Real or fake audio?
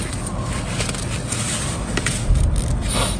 real